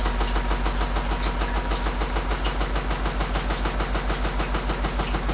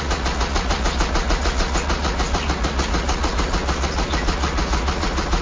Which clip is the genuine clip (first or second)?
first